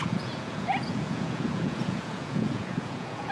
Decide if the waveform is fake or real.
fake